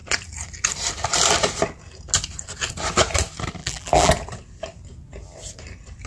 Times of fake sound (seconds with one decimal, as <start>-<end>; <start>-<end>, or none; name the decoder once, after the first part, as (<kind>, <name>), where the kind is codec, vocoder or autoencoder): 3.6-4.1 (vocoder, BigVGAN v2)